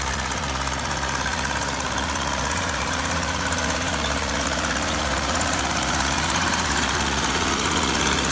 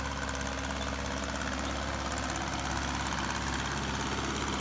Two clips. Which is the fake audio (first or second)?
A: first